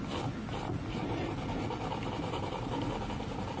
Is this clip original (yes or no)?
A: yes